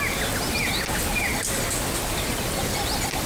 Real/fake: real